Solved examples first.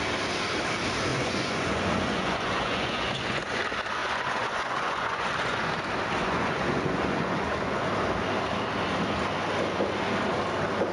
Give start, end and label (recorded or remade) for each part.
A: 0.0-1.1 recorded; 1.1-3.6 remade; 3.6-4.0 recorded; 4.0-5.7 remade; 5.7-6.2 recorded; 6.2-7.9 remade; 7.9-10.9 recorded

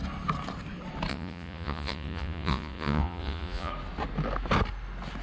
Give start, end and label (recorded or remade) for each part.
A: 0.0-1.1 recorded; 1.1-3.7 remade; 3.7-5.2 recorded

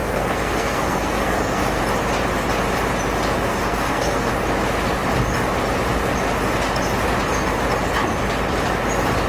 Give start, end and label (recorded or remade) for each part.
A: 0.0-1.8 remade; 1.8-3.5 recorded; 3.5-4.3 remade; 4.3-9.3 recorded

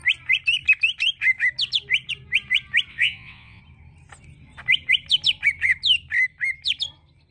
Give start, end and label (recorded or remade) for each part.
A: 0.0-2.9 recorded; 2.9-3.6 remade; 3.6-7.3 recorded

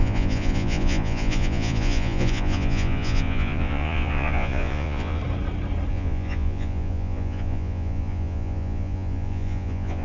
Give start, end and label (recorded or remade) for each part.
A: 0.0-5.2 remade; 5.2-5.9 recorded; 5.9-10.0 remade

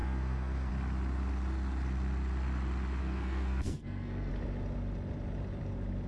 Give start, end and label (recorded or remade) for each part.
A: 0.0-0.7 remade; 0.7-3.0 recorded; 3.0-4.3 remade; 4.3-6.1 recorded